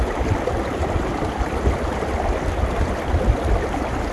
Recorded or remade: recorded